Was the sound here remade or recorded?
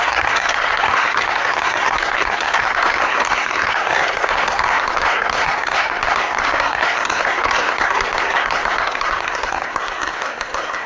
remade